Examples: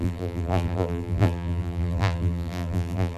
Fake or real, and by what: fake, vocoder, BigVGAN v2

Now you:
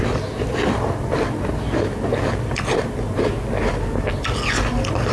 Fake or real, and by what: real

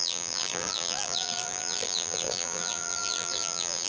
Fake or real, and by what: fake, vocoder, BigVGAN v2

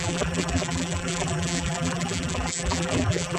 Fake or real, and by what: fake, vocoder, BigVGAN v2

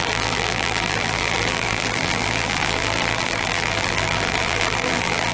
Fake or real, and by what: fake, vocoder, BigVGAN v2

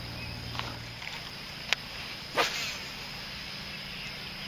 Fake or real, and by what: real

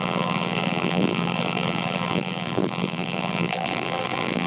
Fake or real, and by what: fake, vocoder, BigVGAN v2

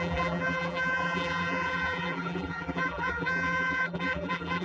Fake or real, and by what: fake, vocoder, BigVGAN v2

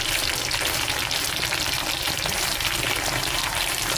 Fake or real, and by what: fake, vocoder, BigVGAN v2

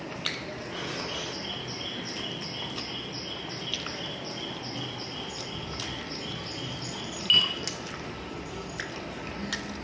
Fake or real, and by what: real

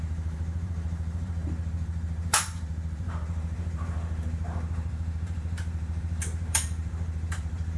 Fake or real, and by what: fake, vocoder, BigVGAN v2